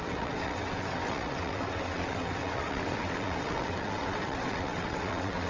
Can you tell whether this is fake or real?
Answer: fake